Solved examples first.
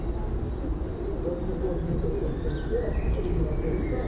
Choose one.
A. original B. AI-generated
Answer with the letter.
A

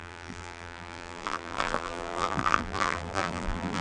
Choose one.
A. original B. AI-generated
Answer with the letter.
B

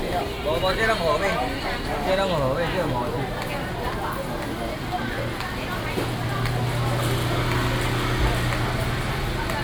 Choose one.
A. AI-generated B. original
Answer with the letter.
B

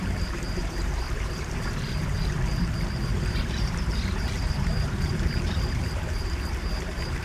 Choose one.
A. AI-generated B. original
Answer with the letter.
A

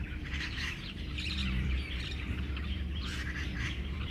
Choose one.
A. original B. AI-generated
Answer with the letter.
B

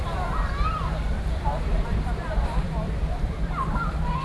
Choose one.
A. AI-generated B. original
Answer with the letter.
A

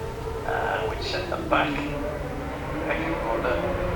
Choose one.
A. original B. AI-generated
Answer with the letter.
B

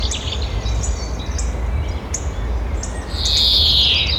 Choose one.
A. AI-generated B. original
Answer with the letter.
B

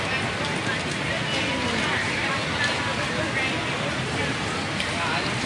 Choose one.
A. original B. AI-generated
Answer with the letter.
A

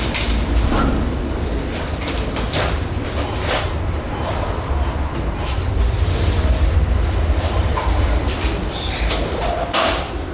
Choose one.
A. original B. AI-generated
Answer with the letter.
B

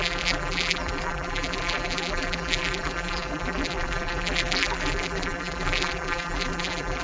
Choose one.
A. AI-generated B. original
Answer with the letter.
A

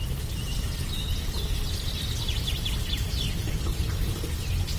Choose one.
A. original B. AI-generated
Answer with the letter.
A